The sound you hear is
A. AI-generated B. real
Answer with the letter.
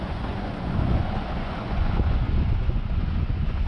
A